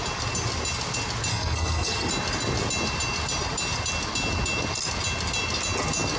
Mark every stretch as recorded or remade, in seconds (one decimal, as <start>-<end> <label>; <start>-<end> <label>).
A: 0.0-1.3 recorded; 1.3-2.1 remade; 2.1-6.2 recorded